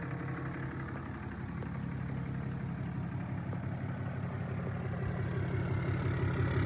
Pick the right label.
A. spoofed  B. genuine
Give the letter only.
B